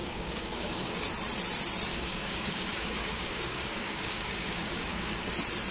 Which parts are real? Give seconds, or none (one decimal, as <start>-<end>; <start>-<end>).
1.0-1.9; 5.3-5.7